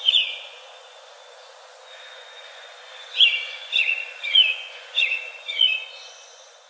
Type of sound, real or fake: fake